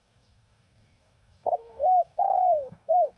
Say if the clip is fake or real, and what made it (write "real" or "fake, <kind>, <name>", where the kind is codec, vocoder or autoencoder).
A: fake, codec, DAC